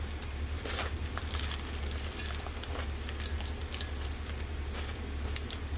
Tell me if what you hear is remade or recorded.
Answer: recorded